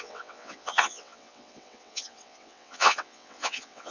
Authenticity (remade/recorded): remade